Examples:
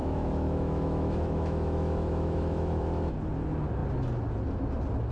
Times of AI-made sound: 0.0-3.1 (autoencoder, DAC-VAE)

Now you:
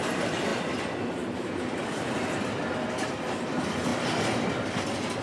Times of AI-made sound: 0.0-0.5 (vocoder, BigVGAN v2); 1.6-3.9

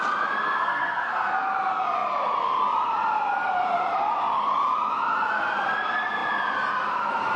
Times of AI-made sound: 0.4-1.3 (codec, SNAC)

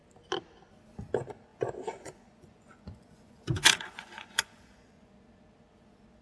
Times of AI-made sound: 1.5-5.1 (vocoder, Vocos)

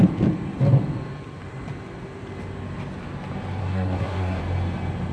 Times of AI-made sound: 3.6-4.4 (codec, SNAC)